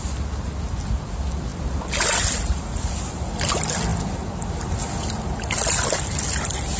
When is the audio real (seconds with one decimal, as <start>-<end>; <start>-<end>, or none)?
0.0-6.8